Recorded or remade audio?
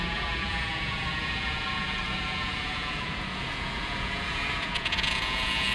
remade